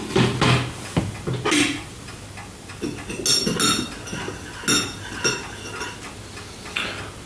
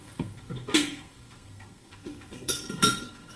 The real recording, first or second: first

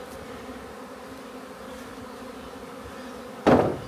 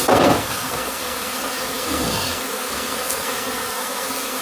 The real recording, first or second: first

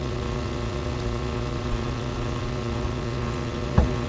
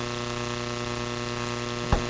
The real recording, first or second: second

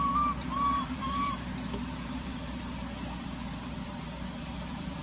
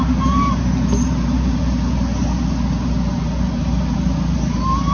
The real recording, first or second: second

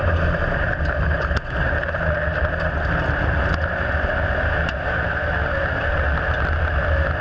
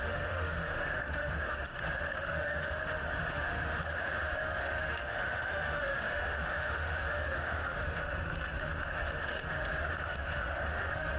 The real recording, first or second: first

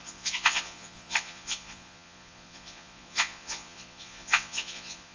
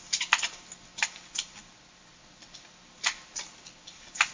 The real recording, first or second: second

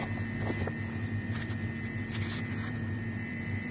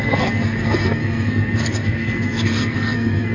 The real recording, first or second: first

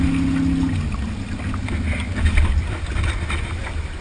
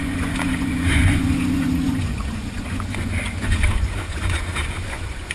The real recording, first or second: first